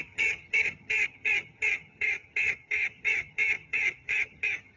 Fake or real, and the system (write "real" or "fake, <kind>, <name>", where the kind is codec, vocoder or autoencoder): fake, vocoder, HiFi-GAN